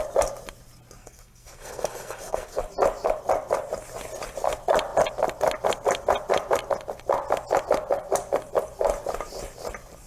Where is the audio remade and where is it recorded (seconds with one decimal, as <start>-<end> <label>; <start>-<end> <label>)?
0.0-1.0 recorded; 1.0-2.6 remade; 2.6-10.1 recorded

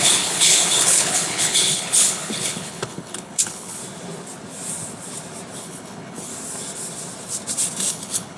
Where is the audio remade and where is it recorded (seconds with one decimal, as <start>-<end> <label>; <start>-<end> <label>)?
0.0-3.8 remade; 3.8-5.6 recorded; 5.6-6.3 remade; 6.3-7.9 recorded; 7.9-8.4 remade

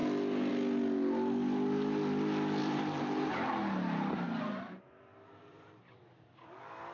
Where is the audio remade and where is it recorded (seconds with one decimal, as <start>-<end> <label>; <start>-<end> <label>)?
0.0-2.6 recorded; 2.6-6.0 remade; 6.0-6.9 recorded

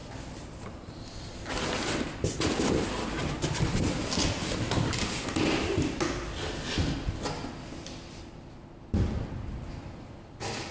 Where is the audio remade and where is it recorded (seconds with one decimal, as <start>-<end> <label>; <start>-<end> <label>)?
0.0-10.7 recorded

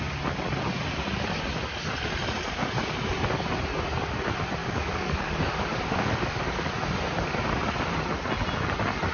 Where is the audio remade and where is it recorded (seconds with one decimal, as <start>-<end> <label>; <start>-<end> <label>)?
0.0-4.6 recorded; 4.6-6.7 remade; 6.7-9.1 recorded

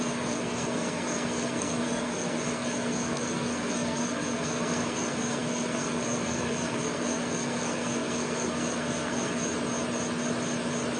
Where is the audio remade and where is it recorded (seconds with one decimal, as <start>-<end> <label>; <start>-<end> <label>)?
0.0-9.5 remade; 9.5-11.0 recorded